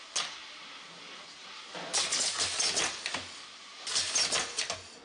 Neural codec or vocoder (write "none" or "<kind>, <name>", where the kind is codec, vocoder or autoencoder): none